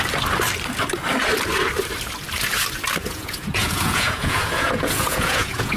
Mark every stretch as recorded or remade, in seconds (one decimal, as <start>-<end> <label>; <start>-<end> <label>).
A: 0.0-3.0 recorded; 3.0-5.8 remade